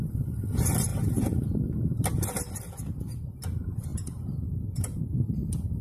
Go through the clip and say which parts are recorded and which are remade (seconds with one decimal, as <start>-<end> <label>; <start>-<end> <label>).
0.0-0.9 recorded; 0.9-1.5 remade; 1.5-3.9 recorded; 3.9-5.8 remade